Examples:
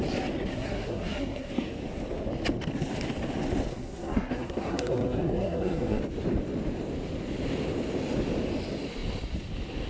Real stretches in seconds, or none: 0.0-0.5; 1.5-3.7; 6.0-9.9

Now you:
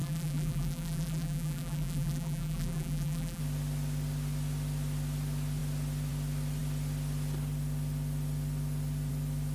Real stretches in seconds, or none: 3.4-9.5

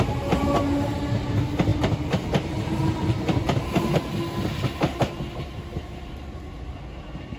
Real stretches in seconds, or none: 0.0-7.4

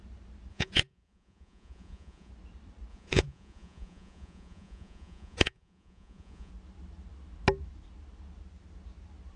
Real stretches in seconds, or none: 0.0-0.5; 2.3-2.9; 6.5-9.4

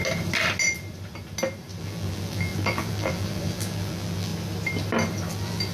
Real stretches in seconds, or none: 0.0-1.8; 4.3-5.3

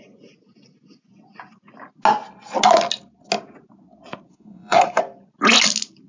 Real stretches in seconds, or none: 0.0-4.3; 5.0-6.1